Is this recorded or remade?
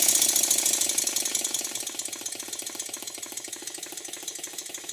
recorded